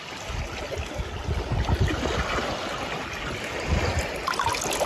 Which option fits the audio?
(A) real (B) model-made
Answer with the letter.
A